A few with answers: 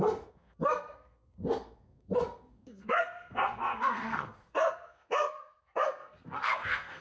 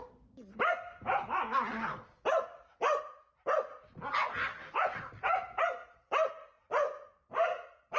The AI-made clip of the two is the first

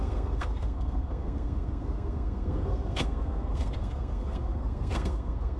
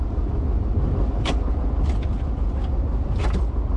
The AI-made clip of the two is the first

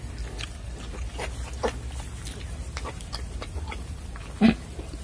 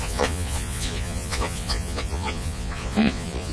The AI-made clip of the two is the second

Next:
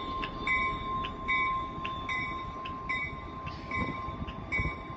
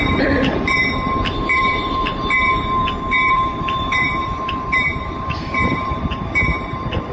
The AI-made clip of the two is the second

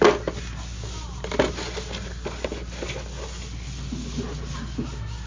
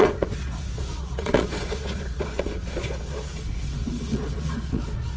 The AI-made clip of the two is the second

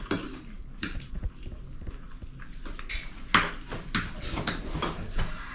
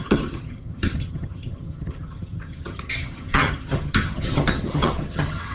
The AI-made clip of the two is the second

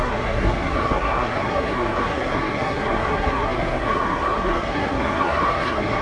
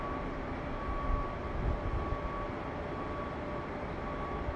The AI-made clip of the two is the first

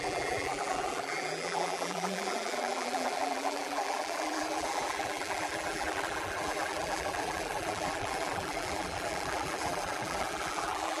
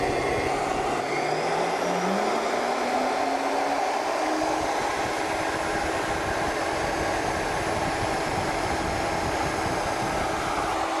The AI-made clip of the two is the first